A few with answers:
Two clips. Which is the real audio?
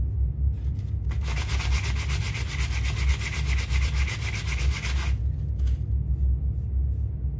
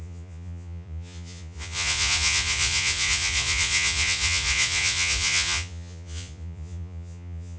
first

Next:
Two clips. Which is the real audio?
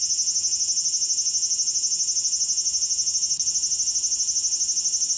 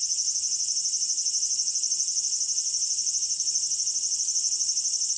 first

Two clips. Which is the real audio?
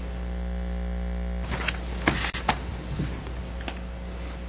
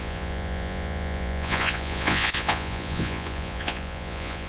first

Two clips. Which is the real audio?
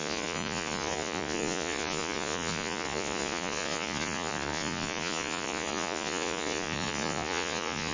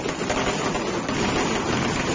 second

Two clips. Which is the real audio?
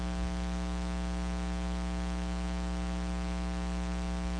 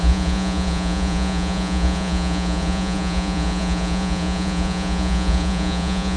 first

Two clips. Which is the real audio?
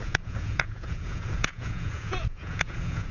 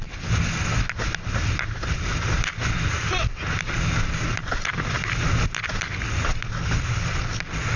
second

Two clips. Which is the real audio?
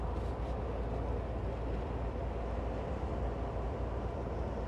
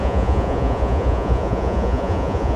first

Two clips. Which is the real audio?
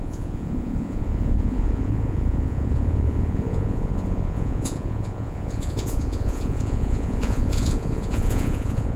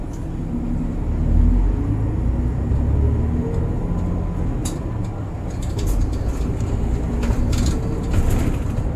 second